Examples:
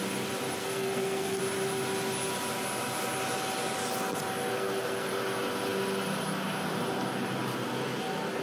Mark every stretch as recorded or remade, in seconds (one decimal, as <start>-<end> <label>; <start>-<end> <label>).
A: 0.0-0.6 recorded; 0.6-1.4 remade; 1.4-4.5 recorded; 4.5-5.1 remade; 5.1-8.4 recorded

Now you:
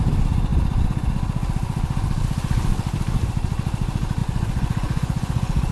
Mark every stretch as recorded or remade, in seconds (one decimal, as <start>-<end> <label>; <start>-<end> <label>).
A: 0.0-4.2 recorded; 4.2-5.7 remade

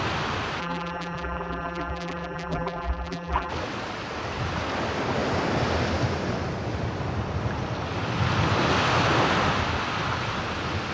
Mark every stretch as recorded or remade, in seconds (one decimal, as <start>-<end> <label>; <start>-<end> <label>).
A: 0.0-0.6 recorded; 0.6-3.5 remade; 3.5-10.9 recorded